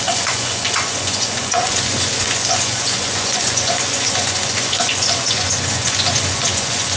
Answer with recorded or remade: remade